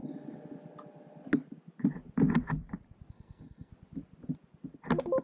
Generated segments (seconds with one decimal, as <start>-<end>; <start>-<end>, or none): 3.1-3.7